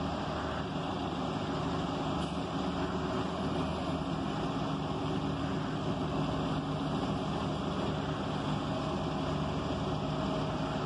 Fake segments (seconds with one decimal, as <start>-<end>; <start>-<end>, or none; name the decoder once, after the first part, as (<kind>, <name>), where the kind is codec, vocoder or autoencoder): none